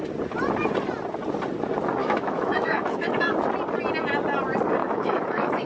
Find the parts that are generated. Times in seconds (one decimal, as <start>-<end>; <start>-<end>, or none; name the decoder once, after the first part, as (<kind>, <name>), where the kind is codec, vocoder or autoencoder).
2.0-3.5 (autoencoder, DAC-VAE); 4.8-5.7